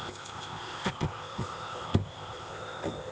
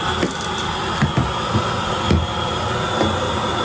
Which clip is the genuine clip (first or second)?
second